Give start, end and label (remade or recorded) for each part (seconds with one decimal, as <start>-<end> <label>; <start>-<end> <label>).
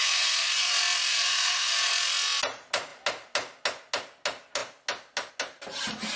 0.0-0.7 remade; 0.7-1.1 recorded; 1.1-1.7 remade; 1.7-6.2 recorded